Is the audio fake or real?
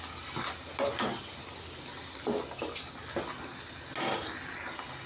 real